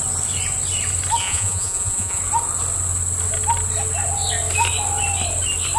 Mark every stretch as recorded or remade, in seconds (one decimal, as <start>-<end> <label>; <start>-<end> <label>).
0.0-1.2 recorded; 1.2-2.2 remade; 2.2-5.8 recorded